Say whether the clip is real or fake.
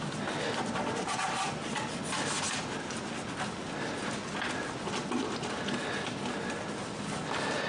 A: real